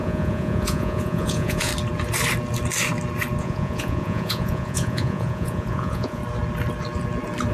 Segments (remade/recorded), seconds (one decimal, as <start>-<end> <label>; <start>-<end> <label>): 0.0-1.7 remade; 1.7-3.4 recorded; 3.4-6.2 remade; 6.2-7.5 recorded